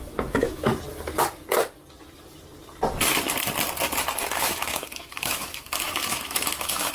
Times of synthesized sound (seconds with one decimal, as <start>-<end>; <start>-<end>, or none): 0.0-0.7; 4.3-6.9